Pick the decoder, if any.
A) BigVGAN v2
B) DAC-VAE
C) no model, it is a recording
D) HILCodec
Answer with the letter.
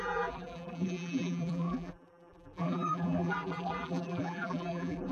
A